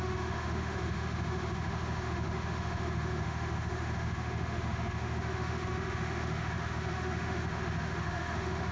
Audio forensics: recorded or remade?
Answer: remade